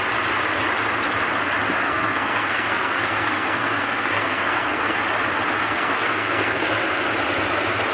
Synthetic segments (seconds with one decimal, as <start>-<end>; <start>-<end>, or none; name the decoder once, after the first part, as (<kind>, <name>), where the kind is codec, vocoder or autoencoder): 1.8-5.0 (codec, SNAC); 5.6-6.7